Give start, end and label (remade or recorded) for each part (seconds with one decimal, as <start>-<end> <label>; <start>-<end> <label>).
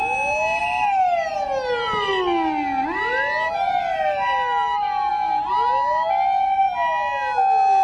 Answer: 0.0-7.8 recorded